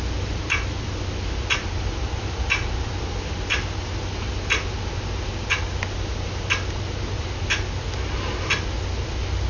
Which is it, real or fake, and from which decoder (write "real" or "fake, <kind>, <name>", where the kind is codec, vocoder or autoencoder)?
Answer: real